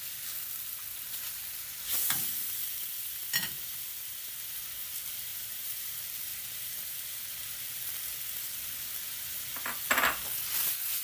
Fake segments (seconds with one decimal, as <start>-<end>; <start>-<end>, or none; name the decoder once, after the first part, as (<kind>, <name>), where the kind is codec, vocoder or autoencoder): 2.6-3.9 (vocoder, BigVGAN v2); 5.3-5.8